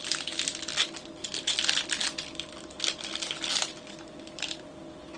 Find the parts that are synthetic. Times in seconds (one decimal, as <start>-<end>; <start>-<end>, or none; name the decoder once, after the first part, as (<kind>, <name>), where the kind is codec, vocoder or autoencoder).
none